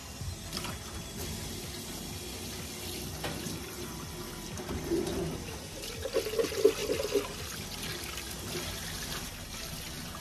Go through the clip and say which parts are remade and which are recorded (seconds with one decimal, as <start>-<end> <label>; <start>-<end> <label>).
0.0-10.2 recorded